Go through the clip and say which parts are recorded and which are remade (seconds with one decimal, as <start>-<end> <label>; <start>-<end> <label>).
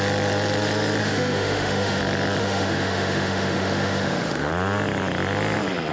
0.0-1.0 recorded; 1.0-2.0 remade; 2.0-2.4 recorded; 2.4-4.5 remade; 4.5-5.9 recorded